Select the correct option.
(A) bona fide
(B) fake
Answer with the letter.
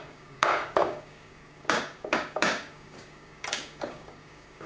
B